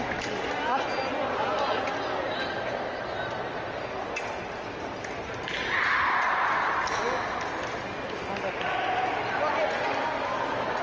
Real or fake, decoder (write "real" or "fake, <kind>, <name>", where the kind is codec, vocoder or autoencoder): real